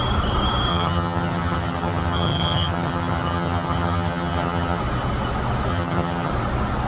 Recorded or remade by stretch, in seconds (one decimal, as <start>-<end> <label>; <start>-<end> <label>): 0.0-0.7 recorded; 0.7-4.8 remade; 4.8-5.7 recorded; 5.7-6.3 remade; 6.3-6.9 recorded